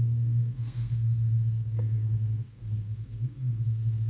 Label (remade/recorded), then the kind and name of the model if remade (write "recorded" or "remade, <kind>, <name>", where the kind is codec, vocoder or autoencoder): remade, codec, SNAC